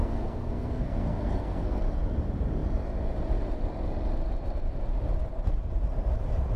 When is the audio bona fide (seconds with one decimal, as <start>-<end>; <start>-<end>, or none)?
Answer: 1.8-6.6